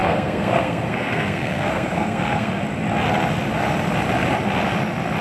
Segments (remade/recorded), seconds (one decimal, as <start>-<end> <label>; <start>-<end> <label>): 0.0-2.5 remade; 2.5-5.2 recorded